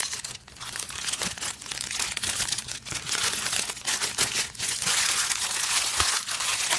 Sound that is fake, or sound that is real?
fake